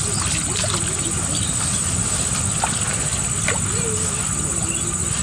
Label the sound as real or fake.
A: real